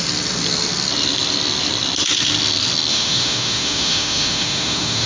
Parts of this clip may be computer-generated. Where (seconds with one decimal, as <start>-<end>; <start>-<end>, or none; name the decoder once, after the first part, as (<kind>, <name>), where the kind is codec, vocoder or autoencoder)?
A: 2.9-5.1 (autoencoder, DAC-VAE)